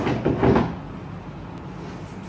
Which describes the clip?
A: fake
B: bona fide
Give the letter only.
B